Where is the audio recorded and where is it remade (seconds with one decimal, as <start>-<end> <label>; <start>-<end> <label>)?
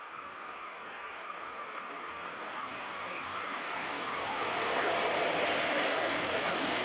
0.0-4.9 remade; 4.9-5.7 recorded; 5.7-6.8 remade